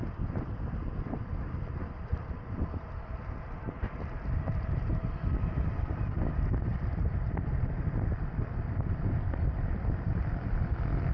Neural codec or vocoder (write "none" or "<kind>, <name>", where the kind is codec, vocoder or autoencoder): vocoder, BigVGAN v2